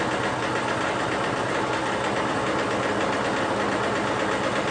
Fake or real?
real